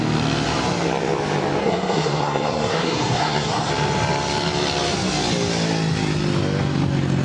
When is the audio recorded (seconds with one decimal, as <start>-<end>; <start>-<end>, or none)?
0.0-1.6; 3.7-7.2